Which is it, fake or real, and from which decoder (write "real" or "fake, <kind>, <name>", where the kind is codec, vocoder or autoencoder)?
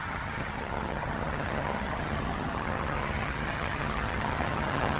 fake, vocoder, HiFi-GAN